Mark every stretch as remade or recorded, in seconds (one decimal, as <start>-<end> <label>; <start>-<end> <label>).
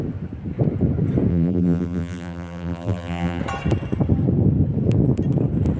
0.0-1.3 recorded; 1.3-3.4 remade; 3.4-5.8 recorded